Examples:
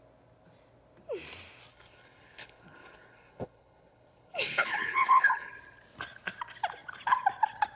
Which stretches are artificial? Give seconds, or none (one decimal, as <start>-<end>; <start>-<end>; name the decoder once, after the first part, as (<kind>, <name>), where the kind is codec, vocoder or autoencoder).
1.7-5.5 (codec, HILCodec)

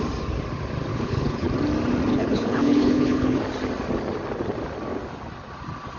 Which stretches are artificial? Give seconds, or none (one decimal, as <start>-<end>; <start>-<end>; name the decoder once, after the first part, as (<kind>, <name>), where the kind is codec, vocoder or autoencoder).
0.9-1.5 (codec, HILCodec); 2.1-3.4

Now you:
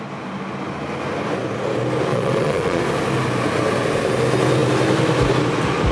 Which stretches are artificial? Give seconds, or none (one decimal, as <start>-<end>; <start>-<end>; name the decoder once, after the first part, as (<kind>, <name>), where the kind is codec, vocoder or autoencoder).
2.1-2.8 (vocoder, Vocos)

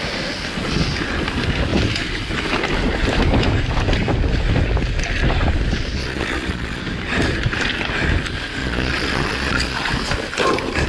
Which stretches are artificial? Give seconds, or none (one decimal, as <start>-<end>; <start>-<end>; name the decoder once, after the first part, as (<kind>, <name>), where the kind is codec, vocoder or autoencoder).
6.0-6.8 (vocoder, Vocos); 8.6-9.9

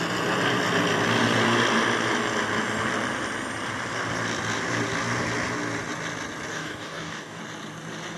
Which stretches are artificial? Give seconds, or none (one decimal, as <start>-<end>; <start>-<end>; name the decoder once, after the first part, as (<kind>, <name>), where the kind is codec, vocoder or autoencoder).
6.5-7.4 (codec, DAC)

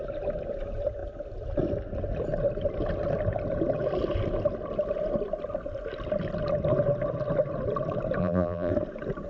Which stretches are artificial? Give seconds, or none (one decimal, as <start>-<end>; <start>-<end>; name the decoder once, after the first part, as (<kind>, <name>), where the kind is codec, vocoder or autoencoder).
8.2-8.7 (vocoder, BigVGAN v2)